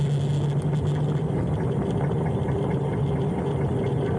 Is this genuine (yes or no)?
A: yes